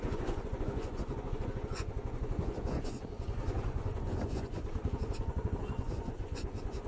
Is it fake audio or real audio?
fake